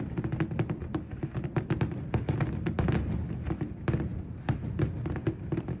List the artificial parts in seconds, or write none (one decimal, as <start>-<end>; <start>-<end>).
none